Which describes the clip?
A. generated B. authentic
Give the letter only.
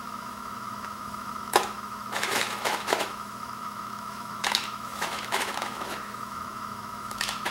A